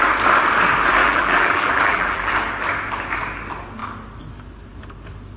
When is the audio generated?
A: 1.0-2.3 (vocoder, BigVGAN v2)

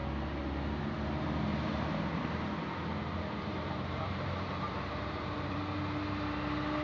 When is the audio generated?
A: 1.5-5.6 (vocoder, BigVGAN v2)

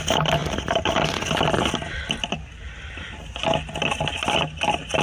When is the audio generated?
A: none

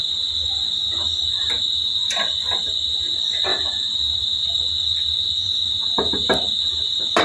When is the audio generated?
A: 3.5-4.5 (vocoder, BigVGAN v2)

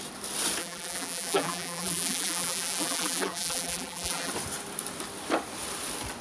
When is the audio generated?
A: 0.6-4.3 (vocoder, BigVGAN v2)